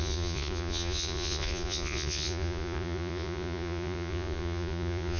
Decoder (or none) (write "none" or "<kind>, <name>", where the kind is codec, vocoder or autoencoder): vocoder, Vocos